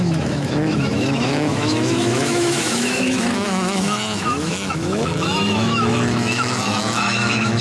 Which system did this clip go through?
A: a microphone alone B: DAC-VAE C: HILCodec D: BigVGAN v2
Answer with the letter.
B